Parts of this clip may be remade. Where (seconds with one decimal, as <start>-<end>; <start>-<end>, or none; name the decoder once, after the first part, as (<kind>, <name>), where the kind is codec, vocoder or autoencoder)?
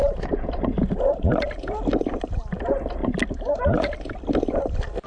0.0-1.1 (vocoder, Vocos)